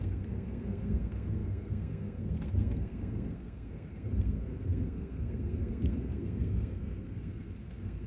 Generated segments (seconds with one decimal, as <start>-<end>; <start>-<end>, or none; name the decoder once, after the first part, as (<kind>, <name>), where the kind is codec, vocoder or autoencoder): 0.0-8.1 (codec, SNAC)